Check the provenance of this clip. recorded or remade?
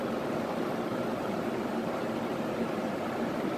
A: remade